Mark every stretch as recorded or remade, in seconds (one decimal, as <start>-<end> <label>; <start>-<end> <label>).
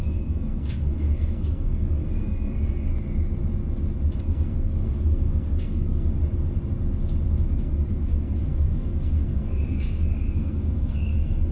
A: 0.0-2.9 remade; 2.9-4.2 recorded; 4.2-6.2 remade; 6.2-7.5 recorded; 7.5-11.5 remade